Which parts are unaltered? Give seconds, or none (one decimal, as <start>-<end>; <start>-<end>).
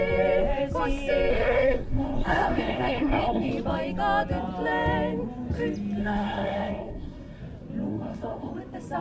0.0-1.3; 3.5-6.0; 7.4-7.9; 8.5-9.0